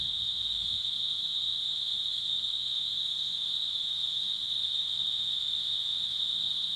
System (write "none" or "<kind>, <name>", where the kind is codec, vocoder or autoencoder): autoencoder, DAC-VAE